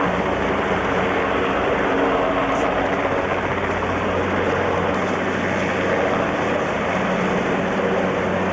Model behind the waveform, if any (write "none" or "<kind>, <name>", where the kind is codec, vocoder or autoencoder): none